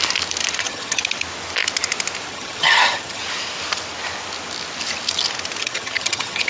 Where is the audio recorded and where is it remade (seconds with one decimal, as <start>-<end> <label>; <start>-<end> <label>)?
0.0-0.6 recorded; 0.6-1.0 remade; 1.0-2.3 recorded; 2.3-3.2 remade; 3.2-5.6 recorded; 5.6-6.5 remade